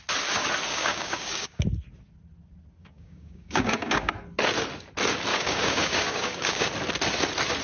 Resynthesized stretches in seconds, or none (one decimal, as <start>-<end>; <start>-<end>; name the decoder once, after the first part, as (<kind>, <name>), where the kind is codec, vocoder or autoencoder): 0.7-1.6 (codec, DAC); 2.8-4.1; 5.3-6.7